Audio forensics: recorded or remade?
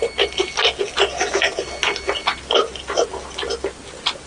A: recorded